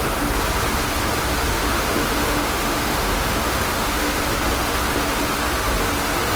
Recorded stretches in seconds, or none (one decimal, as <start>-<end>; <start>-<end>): 0.0-1.5; 4.2-6.4